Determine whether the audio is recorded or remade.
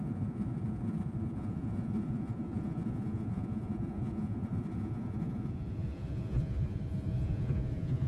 remade